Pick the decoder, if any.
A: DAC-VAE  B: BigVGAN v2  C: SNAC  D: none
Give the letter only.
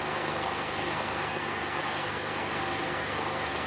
C